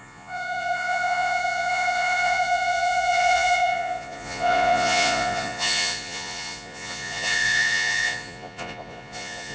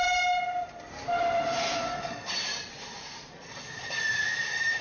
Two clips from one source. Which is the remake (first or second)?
first